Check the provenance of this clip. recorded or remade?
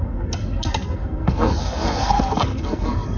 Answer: remade